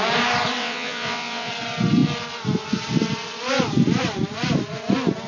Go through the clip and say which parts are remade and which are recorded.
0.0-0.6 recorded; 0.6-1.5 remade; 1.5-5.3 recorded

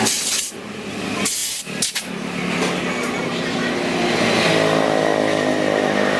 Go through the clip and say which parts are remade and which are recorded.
0.0-6.2 recorded

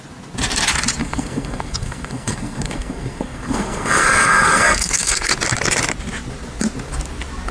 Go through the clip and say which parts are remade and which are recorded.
0.0-1.0 recorded; 1.0-5.3 remade; 5.3-7.5 recorded

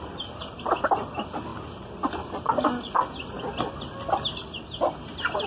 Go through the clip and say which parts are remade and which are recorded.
0.0-5.5 recorded

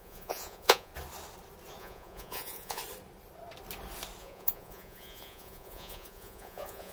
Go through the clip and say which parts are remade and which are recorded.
0.0-0.9 remade; 0.9-1.8 recorded; 1.8-2.8 remade; 2.8-4.2 recorded; 4.2-6.9 remade

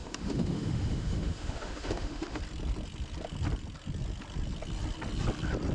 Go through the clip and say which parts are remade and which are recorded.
0.0-2.4 remade; 2.4-5.7 recorded

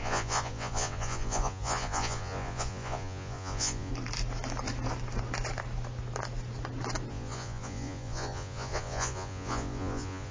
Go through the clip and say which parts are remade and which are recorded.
0.0-3.9 remade; 3.9-7.1 recorded; 7.1-10.3 remade

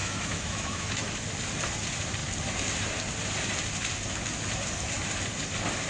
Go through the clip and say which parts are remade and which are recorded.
0.0-1.0 remade; 1.0-5.9 recorded